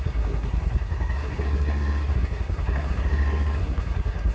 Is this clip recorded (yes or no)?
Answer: no